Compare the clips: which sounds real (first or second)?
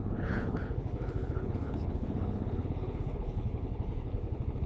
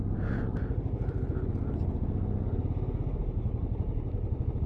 second